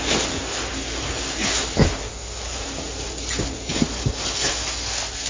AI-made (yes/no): no